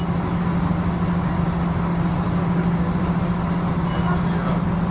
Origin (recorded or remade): recorded